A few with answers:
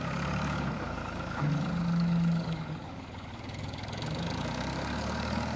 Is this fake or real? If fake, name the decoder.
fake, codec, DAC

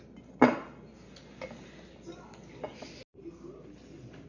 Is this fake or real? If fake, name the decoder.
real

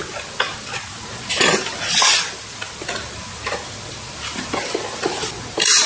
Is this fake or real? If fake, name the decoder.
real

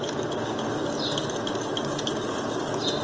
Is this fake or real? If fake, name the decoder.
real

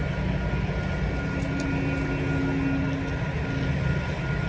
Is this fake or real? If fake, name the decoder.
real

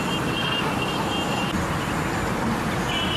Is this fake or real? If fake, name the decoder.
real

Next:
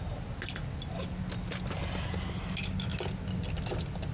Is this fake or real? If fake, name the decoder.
real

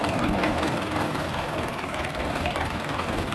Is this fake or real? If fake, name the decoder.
fake, codec, DAC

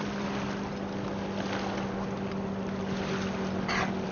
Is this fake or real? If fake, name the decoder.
real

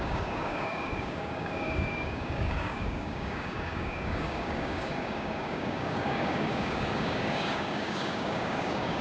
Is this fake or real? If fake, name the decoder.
fake, codec, DAC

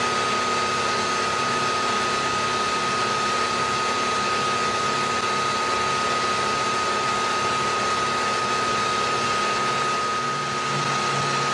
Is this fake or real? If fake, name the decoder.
real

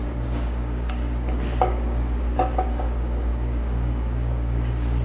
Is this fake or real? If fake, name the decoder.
fake, codec, DAC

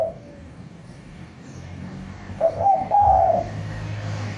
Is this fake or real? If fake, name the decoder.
fake, codec, DAC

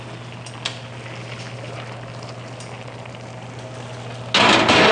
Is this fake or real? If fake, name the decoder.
real